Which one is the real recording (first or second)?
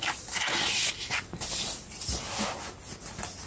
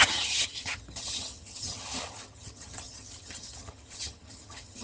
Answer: first